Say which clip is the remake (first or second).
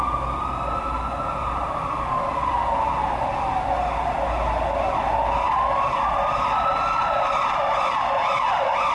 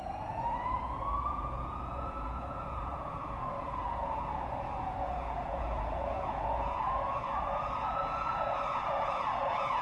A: second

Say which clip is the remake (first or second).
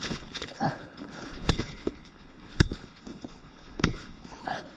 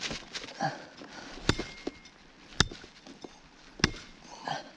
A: first